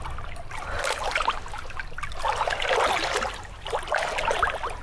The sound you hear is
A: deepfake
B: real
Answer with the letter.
B